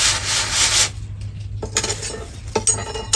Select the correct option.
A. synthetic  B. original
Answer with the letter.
B